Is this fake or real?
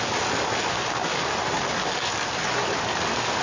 real